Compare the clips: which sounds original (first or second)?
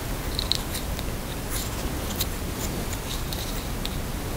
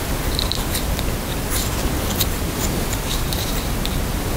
first